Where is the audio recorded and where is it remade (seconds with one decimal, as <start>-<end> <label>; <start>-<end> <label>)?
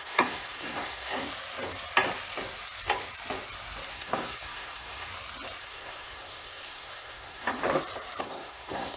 0.0-1.3 remade; 1.3-3.9 recorded; 3.9-5.1 remade; 5.1-5.6 recorded; 5.6-7.6 remade; 7.6-8.2 recorded; 8.2-9.0 remade